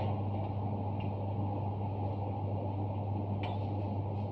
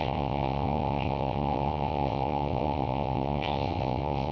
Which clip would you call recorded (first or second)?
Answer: first